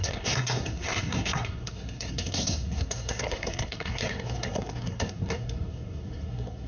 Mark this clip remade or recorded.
remade